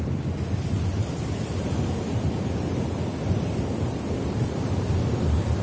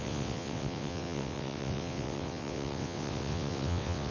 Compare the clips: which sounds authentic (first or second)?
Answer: first